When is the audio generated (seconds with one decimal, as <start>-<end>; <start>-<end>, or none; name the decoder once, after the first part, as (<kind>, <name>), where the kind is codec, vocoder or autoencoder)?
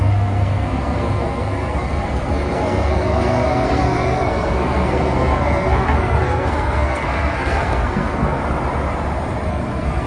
0.0-8.4 (codec, SNAC); 9.5-10.1